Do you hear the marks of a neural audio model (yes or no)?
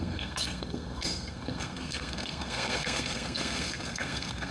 yes